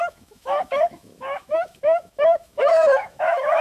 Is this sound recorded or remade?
remade